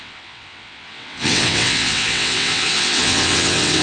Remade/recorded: remade